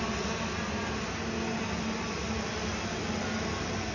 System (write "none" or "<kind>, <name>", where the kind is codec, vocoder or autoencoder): none